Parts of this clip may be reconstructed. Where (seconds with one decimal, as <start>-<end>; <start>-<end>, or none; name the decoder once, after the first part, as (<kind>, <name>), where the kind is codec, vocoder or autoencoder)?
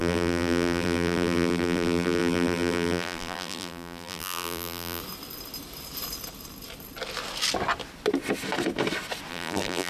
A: 0.0-5.0 (vocoder, BigVGAN v2); 9.3-9.9